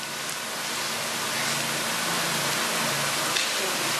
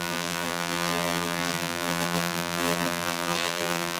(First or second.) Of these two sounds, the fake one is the second